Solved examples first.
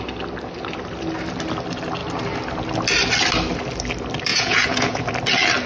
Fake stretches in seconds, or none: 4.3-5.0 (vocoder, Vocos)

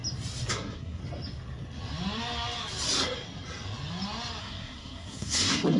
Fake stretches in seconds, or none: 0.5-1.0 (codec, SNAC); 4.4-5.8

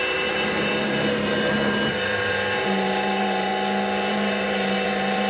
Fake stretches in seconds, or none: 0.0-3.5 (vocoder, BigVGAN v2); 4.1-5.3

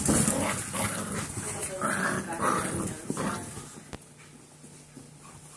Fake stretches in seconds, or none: none

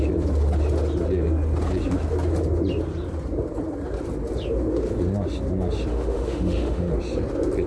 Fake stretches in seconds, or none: 5.9-6.9 (autoencoder, DAC-VAE)